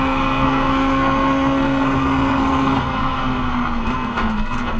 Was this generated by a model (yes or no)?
yes